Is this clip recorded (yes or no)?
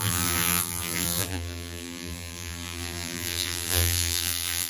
no